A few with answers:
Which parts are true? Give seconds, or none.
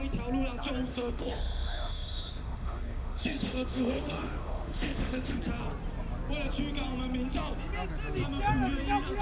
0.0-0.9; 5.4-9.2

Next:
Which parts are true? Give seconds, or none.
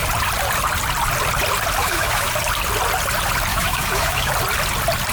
0.0-1.8; 2.3-3.5; 4.3-5.1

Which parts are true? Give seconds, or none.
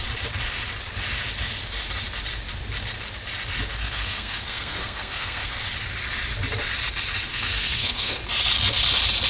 0.0-3.8; 5.5-7.3; 8.2-9.3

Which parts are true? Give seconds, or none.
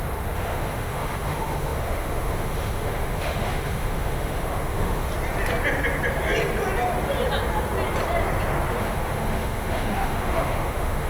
5.1-8.8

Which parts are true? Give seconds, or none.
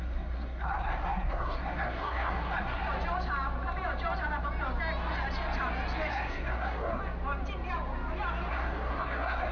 2.8-6.1; 7.0-8.5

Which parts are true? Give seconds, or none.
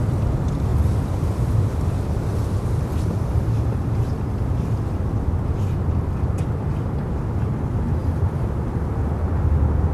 0.0-0.7; 5.6-8.0; 8.6-9.9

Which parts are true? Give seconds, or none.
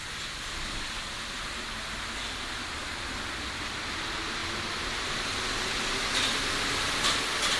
0.0-7.6